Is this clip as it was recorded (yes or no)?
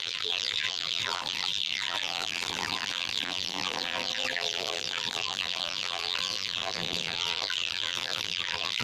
no